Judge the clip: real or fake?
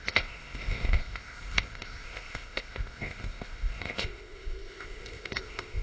fake